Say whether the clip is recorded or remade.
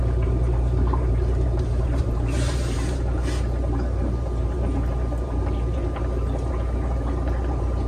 remade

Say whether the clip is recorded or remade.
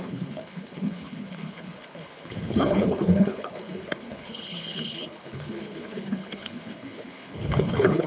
remade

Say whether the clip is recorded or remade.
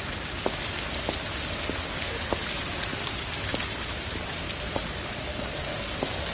recorded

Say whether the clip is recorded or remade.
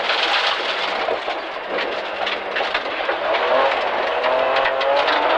recorded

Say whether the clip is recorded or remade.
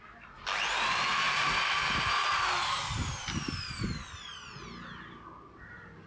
recorded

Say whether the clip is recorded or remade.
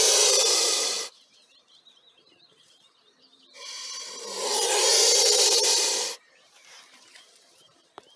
remade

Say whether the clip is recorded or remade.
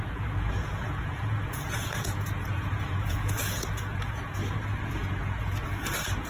remade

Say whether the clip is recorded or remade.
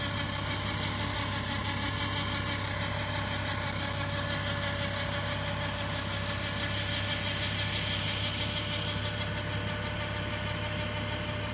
recorded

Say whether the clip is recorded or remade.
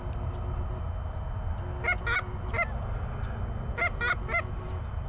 recorded